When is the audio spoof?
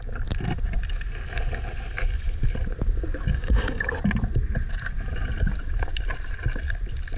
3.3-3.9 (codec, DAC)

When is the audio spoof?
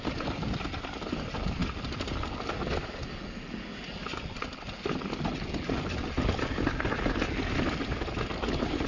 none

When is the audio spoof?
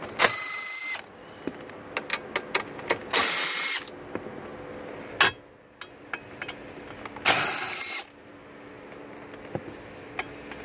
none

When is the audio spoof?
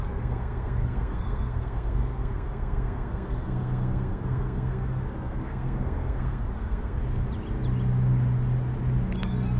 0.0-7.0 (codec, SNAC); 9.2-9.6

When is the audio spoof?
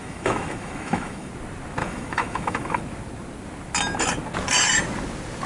0.0-1.3 (autoencoder, DAC-VAE); 1.8-2.8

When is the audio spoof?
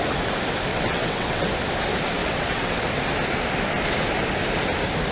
0.7-1.5 (vocoder, WaveNeXt); 2.2-2.8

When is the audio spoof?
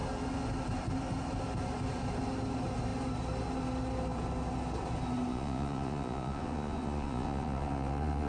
5.3-8.3 (vocoder, Vocos)